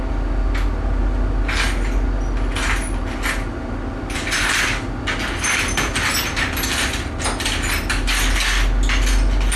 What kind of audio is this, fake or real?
real